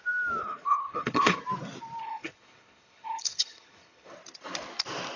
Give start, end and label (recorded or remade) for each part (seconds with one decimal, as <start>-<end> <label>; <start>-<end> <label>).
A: 0.0-0.4 recorded; 0.4-1.4 remade; 1.4-2.0 recorded; 2.0-4.1 remade; 4.1-5.2 recorded